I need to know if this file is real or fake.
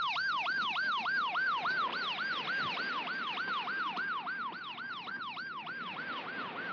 real